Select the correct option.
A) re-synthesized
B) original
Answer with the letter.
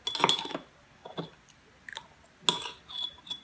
B